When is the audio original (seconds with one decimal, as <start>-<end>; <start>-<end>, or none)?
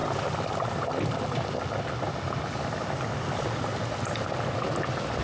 0.0-5.2